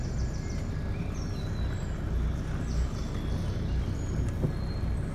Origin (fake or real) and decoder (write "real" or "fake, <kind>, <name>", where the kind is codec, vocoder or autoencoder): real